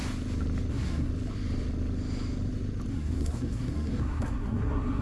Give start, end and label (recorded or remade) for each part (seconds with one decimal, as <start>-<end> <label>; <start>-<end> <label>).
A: 0.0-0.7 recorded; 0.7-1.1 remade; 1.1-2.9 recorded; 2.9-5.0 remade